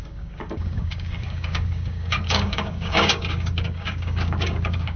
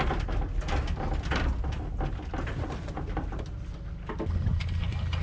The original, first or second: second